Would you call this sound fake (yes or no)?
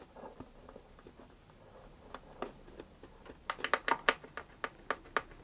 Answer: no